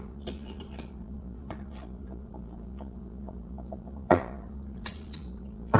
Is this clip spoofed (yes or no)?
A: yes